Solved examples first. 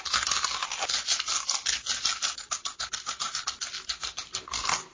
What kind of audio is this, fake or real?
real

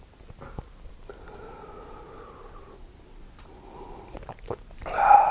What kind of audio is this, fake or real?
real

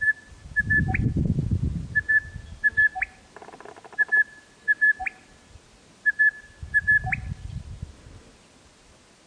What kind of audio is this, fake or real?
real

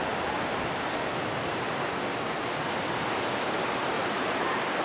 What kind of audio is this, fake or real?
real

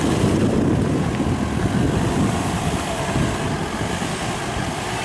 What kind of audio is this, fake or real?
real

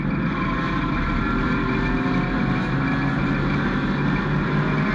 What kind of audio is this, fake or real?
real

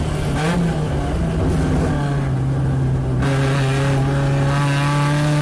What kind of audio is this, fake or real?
real